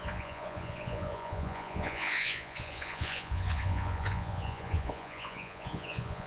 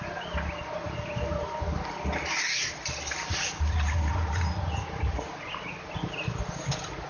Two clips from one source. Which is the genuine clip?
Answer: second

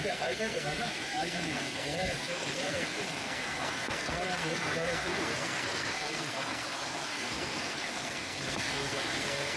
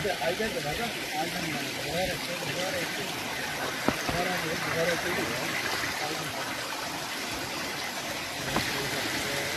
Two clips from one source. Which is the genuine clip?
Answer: second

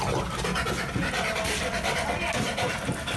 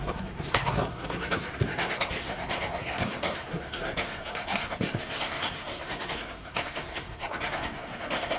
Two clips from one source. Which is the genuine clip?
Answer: first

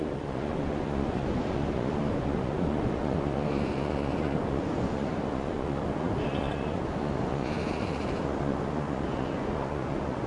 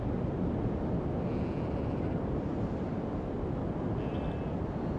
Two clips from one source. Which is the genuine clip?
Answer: second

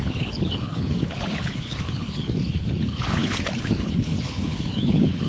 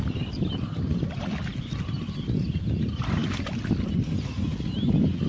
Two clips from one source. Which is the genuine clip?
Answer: second